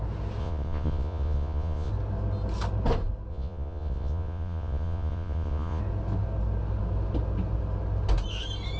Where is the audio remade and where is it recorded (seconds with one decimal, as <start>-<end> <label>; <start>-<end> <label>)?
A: 0.0-0.4 recorded; 0.4-1.9 remade; 1.9-3.3 recorded; 3.3-5.8 remade; 5.8-8.8 recorded